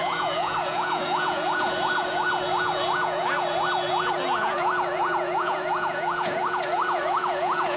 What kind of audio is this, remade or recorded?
remade